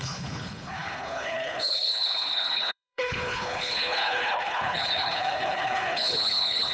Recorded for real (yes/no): no